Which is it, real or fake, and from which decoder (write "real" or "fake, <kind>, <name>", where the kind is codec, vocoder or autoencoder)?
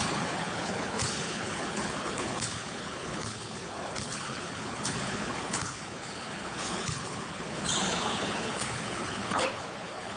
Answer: fake, codec, HILCodec